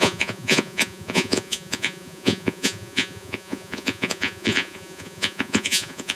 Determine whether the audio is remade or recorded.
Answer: remade